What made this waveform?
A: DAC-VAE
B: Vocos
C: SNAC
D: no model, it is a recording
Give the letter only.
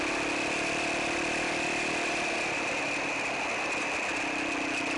D